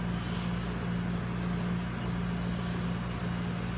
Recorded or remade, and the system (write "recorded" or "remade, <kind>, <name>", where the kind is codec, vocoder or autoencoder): recorded